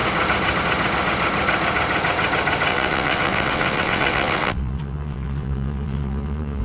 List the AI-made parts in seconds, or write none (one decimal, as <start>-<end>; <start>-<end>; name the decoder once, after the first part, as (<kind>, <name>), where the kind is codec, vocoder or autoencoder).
2.7-6.6 (vocoder, WaveNeXt)